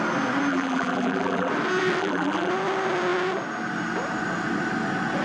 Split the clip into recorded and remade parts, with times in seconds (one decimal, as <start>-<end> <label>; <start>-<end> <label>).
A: 0.0-0.5 recorded; 0.5-1.5 remade; 1.5-2.0 recorded; 2.0-2.5 remade; 2.5-5.2 recorded